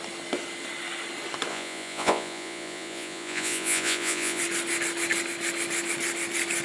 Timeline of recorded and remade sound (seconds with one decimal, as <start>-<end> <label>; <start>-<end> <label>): 0.0-1.5 recorded; 1.5-4.4 remade; 4.4-6.6 recorded